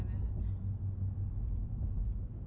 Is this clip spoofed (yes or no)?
no